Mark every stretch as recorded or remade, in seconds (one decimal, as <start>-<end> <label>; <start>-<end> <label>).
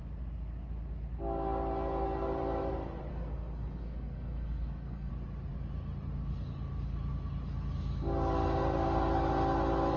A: 0.0-3.1 recorded; 3.1-5.1 remade; 5.1-10.0 recorded